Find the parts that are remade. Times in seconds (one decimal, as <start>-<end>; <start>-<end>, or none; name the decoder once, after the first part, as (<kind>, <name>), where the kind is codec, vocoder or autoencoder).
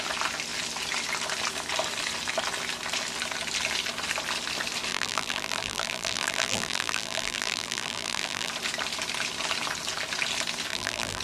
4.9-8.5 (vocoder, BigVGAN v2); 10.7-11.2